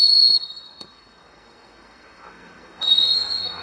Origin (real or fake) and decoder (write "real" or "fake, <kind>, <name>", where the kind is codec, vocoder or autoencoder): fake, codec, SNAC